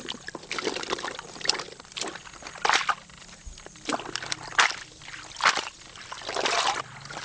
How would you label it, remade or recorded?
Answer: recorded